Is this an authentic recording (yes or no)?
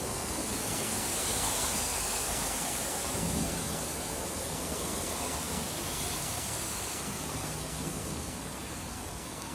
no